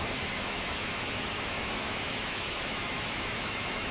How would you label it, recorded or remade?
remade